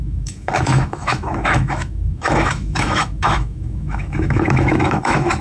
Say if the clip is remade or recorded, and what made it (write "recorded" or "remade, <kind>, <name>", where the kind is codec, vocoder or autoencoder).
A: remade, autoencoder, DAC-VAE